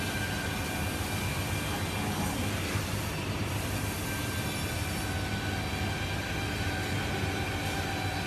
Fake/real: real